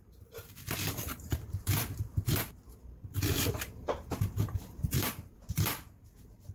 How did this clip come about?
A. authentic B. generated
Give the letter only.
B